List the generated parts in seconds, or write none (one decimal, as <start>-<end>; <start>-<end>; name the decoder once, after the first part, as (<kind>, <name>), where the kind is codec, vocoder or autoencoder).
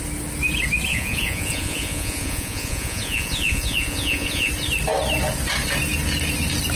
0.9-4.5 (vocoder, Vocos)